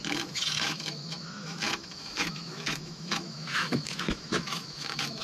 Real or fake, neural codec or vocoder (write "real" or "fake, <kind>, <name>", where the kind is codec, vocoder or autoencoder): fake, autoencoder, DAC-VAE